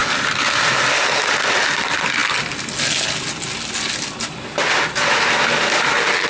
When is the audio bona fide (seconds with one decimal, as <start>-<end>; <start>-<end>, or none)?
0.0-6.3